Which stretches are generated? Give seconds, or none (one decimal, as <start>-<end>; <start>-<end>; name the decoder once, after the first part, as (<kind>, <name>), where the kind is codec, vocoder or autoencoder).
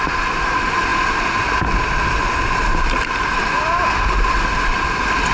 none